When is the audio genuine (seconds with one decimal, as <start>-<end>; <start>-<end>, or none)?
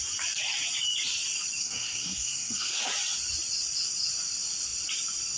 0.0-1.6; 2.8-5.4